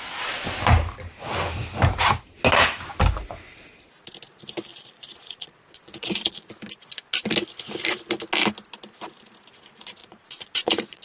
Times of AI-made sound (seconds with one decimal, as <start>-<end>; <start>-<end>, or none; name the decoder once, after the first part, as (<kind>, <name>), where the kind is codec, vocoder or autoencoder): 4.7-6.5 (vocoder, Vocos); 10.0-11.0